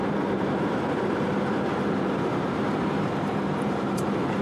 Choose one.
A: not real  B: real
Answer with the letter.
A